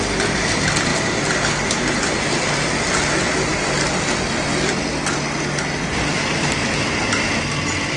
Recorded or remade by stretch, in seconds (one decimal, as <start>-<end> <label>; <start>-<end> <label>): 0.0-8.0 recorded